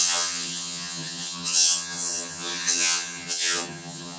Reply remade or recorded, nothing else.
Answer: remade